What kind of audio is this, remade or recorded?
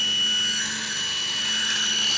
recorded